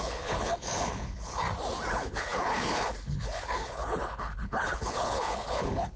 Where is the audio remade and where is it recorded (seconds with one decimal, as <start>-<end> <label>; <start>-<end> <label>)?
0.0-1.4 remade; 1.4-1.9 recorded; 1.9-6.0 remade